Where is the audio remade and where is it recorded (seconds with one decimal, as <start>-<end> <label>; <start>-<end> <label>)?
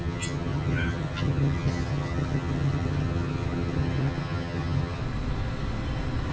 0.0-5.0 remade; 5.0-6.3 recorded